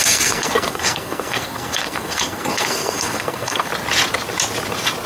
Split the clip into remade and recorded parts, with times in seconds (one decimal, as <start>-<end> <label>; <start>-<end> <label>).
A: 0.0-3.7 remade; 3.7-5.1 recorded

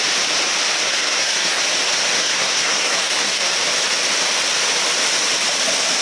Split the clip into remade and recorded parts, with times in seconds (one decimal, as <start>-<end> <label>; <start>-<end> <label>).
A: 0.0-0.8 recorded; 0.8-1.6 remade; 1.6-2.2 recorded; 2.2-3.4 remade; 3.4-6.0 recorded

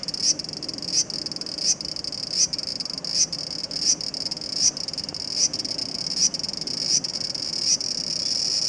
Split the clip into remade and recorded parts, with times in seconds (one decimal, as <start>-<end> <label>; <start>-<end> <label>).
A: 0.0-8.7 recorded